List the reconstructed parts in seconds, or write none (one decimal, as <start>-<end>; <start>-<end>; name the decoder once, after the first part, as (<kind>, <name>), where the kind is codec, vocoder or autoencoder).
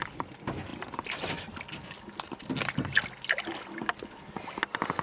none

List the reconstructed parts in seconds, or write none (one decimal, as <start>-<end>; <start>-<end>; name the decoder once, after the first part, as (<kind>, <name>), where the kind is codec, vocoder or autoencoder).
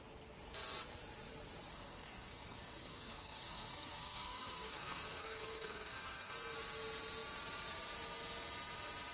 1.7-6.3 (codec, SNAC)